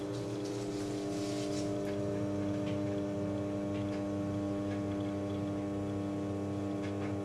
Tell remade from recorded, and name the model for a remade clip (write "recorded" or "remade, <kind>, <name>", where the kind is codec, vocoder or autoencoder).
recorded